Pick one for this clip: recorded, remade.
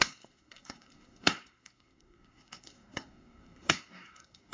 remade